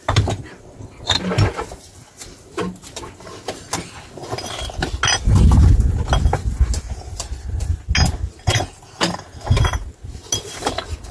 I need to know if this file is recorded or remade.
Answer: recorded